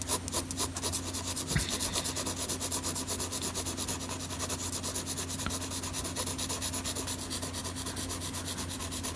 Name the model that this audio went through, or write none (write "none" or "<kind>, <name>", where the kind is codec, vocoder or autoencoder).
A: none